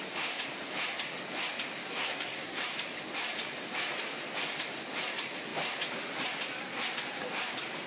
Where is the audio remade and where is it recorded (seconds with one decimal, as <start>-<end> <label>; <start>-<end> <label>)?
0.0-1.9 recorded; 1.9-2.6 remade; 2.6-7.9 recorded